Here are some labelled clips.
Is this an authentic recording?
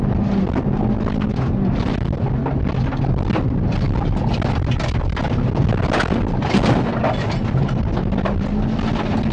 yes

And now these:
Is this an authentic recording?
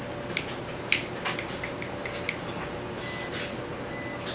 yes